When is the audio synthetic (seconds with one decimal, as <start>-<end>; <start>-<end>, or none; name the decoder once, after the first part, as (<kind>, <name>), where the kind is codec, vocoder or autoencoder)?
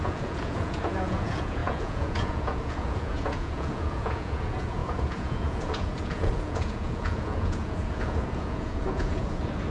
0.0-9.7 (vocoder, Vocos)